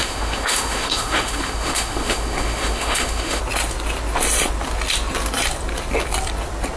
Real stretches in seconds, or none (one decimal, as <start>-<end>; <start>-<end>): 3.4-6.8